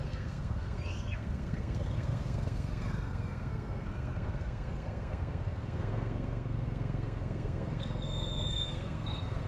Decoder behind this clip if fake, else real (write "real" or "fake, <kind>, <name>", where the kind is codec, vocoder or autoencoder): fake, codec, SNAC